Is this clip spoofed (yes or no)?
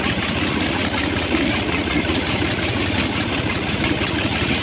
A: yes